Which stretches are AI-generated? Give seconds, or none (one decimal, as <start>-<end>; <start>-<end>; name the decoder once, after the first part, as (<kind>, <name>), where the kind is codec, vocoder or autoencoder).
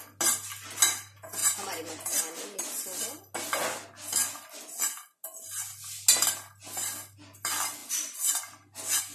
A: 1.4-2.2 (vocoder, BigVGAN v2)